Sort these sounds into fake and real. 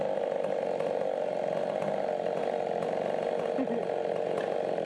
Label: real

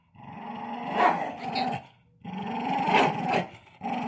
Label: real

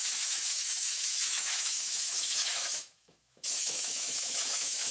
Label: fake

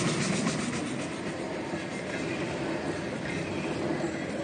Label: real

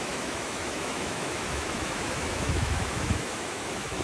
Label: fake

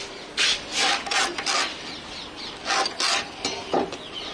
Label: real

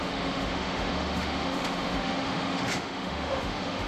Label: fake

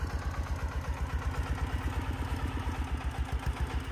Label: real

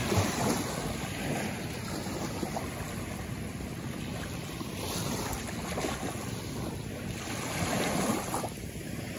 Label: real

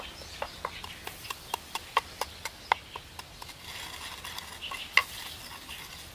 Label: real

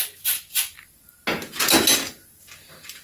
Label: real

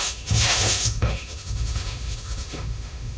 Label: fake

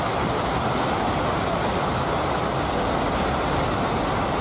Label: real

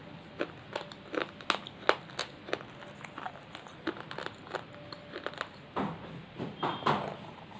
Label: real